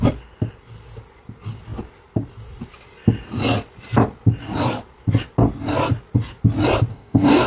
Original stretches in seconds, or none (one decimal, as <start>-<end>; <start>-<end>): 0.0-6.9